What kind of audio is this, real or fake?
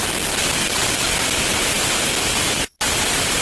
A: real